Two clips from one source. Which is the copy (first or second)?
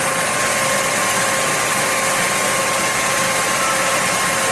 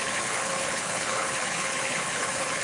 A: second